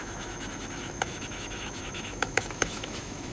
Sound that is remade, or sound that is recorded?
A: remade